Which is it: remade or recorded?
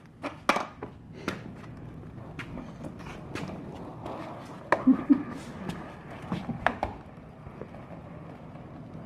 recorded